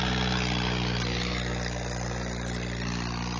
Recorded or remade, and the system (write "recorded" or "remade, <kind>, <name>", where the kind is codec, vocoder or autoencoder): recorded